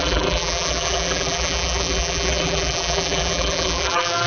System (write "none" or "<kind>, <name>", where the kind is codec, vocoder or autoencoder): vocoder, BigVGAN v2